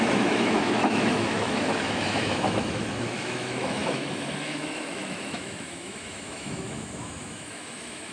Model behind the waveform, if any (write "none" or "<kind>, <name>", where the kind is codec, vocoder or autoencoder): autoencoder, DAC-VAE